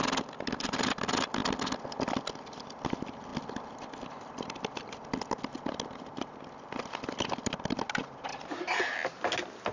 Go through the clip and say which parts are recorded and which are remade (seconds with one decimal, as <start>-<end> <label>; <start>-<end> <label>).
0.0-9.7 recorded